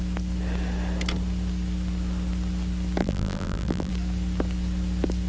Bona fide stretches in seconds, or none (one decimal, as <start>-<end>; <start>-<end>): 0.0-3.0; 3.9-5.3